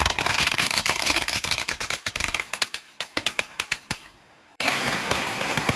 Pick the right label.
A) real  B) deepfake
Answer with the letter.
B